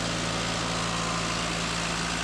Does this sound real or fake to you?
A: real